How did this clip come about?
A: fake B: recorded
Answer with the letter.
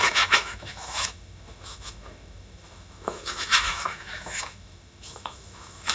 A